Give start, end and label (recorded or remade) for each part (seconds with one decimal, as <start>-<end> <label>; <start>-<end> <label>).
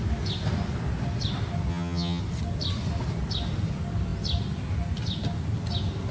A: 0.0-1.7 recorded; 1.7-2.2 remade; 2.2-6.1 recorded